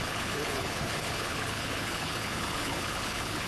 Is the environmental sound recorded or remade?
remade